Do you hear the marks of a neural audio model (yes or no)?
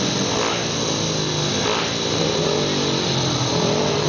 no